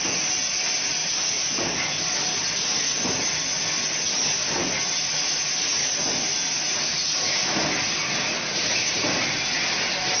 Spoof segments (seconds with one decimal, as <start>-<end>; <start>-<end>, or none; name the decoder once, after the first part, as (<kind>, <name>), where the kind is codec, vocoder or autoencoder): none